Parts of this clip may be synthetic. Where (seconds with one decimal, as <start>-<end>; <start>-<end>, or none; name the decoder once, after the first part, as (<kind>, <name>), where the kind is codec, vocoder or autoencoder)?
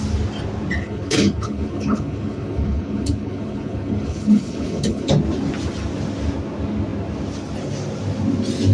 0.8-5.1 (codec, HILCodec)